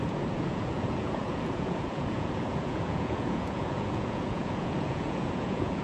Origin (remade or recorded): remade